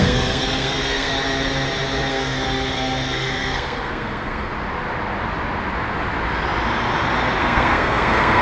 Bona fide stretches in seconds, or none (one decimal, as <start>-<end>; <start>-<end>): 1.1-2.1; 4.5-7.4